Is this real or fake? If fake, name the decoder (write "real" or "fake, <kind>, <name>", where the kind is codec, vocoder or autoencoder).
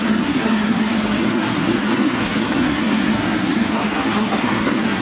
fake, codec, SNAC